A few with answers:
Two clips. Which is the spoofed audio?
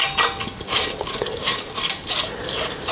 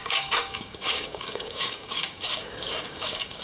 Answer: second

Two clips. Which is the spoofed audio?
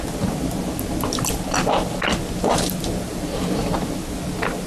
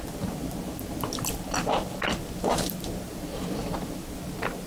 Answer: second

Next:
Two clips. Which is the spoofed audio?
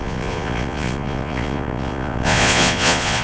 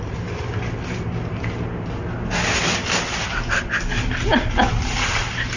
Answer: first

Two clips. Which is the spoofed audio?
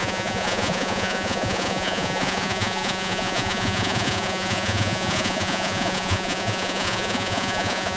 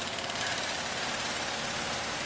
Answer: first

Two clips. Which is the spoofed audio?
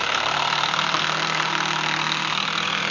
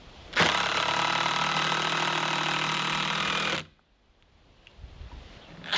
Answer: first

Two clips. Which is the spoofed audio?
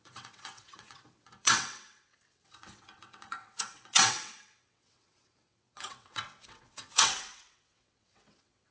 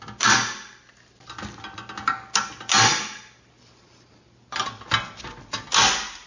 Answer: first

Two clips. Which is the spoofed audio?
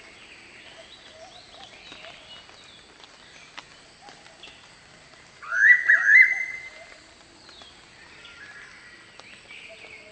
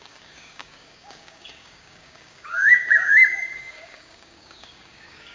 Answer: second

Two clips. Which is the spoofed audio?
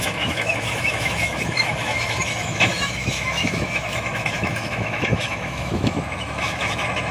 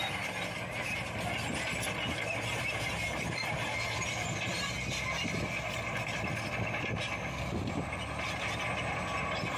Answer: first